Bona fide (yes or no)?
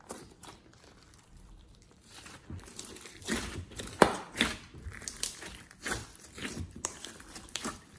no